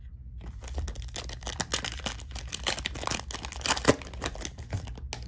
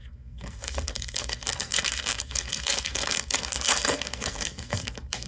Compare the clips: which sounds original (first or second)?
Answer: first